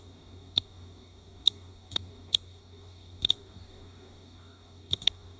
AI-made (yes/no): yes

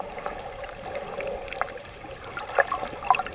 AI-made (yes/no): no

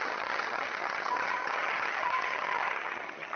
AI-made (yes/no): yes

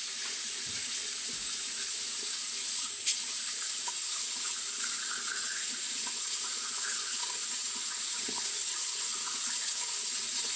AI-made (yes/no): yes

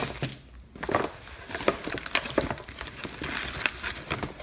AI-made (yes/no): no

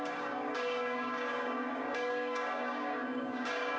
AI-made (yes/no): yes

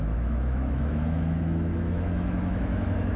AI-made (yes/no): yes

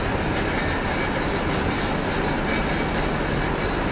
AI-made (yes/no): no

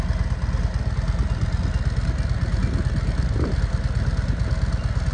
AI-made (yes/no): no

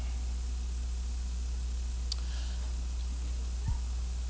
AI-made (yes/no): no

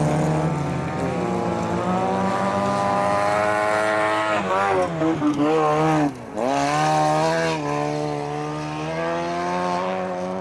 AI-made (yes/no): no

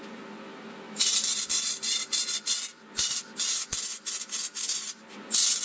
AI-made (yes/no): no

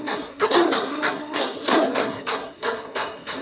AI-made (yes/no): yes